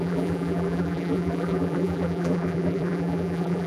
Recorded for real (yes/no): no